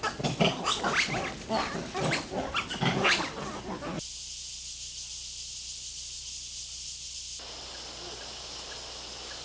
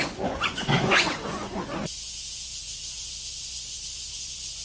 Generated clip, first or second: second